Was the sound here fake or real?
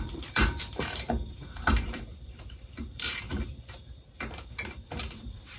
fake